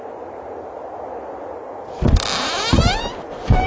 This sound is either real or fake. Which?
real